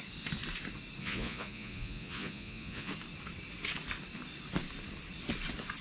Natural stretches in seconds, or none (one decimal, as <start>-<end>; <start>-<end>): 0.0-1.0; 2.9-5.8